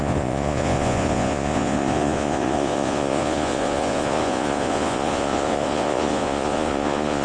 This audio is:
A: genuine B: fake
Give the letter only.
B